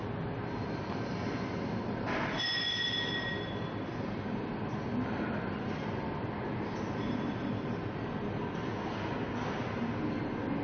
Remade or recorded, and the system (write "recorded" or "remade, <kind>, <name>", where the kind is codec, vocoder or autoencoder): recorded